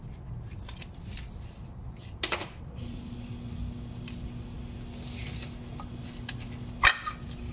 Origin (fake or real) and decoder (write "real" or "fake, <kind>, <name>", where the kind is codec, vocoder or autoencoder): real